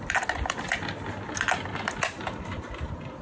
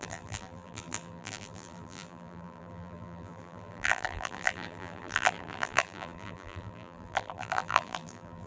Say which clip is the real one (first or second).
first